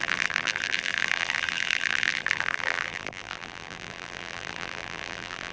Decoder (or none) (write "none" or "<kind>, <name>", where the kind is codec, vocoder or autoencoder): vocoder, BigVGAN v2